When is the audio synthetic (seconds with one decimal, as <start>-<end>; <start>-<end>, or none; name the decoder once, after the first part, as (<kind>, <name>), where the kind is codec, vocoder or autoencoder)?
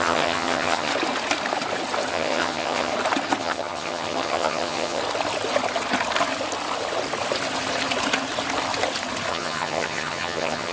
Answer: 0.0-0.9 (vocoder, HiFi-GAN); 2.1-2.9; 3.4-5.0; 9.3-10.7